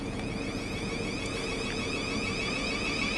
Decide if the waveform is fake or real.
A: fake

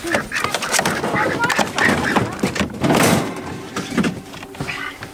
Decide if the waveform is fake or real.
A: fake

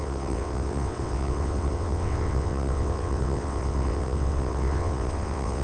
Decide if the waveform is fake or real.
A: fake